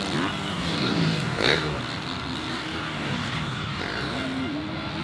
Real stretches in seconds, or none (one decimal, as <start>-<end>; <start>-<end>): 0.0-0.5; 1.8-2.5; 3.8-5.0